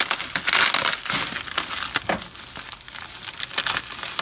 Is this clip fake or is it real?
real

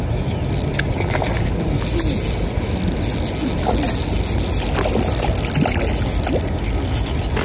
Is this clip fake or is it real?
real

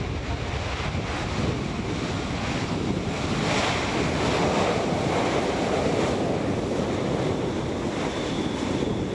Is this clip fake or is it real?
real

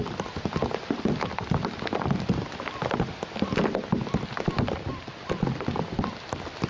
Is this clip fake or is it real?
real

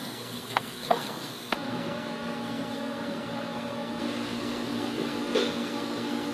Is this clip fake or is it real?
fake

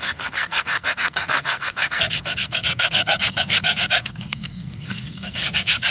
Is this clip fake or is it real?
fake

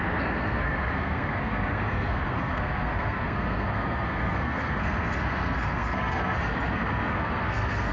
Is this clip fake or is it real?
fake